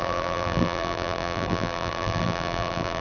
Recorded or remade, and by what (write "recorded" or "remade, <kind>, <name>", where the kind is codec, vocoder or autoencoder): remade, vocoder, BigVGAN v2